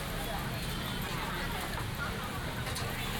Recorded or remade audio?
recorded